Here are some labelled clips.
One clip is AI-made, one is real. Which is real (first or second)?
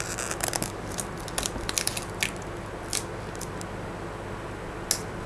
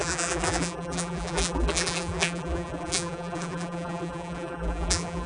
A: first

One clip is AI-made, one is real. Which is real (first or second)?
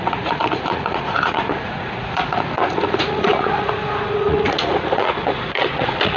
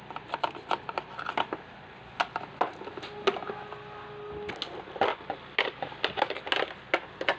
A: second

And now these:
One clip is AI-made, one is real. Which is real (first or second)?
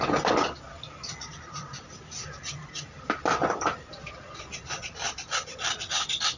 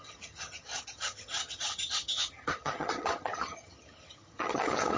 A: first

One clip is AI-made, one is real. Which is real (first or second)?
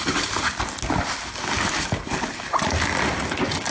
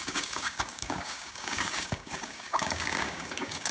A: first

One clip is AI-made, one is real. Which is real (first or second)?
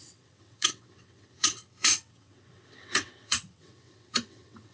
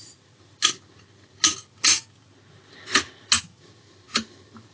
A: second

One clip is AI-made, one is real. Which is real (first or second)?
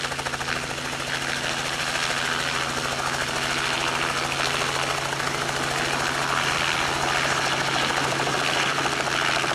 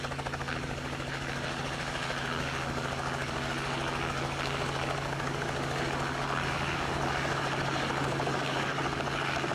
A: first